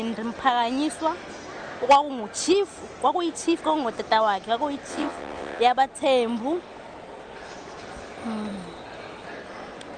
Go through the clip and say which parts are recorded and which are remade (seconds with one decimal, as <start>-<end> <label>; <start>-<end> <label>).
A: 0.0-4.9 recorded; 4.9-5.6 remade; 5.6-10.0 recorded